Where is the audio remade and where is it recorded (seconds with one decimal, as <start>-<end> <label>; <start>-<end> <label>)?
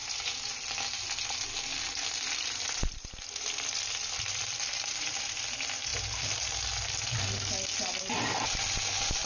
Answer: 0.0-2.1 recorded; 2.1-5.9 remade; 5.9-7.9 recorded; 7.9-9.2 remade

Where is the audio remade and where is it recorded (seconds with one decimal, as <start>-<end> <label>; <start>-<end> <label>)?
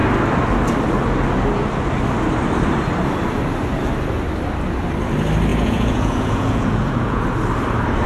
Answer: 0.0-5.5 recorded; 5.5-7.2 remade; 7.2-8.1 recorded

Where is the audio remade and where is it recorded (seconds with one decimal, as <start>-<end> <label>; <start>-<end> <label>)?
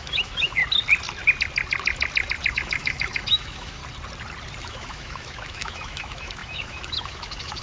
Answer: 0.0-0.6 remade; 0.6-2.5 recorded; 2.5-3.8 remade; 3.8-4.6 recorded; 4.6-7.6 remade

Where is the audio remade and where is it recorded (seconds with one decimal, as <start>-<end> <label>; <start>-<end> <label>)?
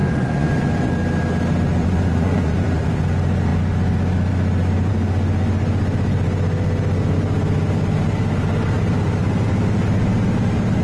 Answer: 0.0-0.9 remade; 0.9-1.8 recorded; 1.8-3.0 remade; 3.0-10.8 recorded